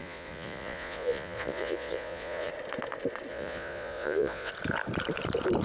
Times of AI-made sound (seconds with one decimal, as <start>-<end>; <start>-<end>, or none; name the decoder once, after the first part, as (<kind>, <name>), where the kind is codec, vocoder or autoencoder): 0.0-2.5 (vocoder, Vocos); 3.3-4.5